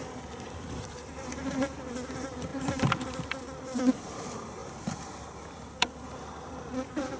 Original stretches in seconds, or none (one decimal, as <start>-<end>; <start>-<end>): 0.0-7.2